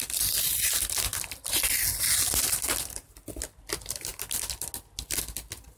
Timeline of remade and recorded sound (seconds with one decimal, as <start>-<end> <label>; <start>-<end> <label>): 0.0-5.8 recorded